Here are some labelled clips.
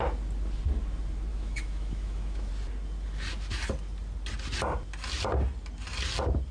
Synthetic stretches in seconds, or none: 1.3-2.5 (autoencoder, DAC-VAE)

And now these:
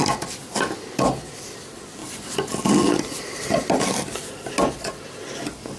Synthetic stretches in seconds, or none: none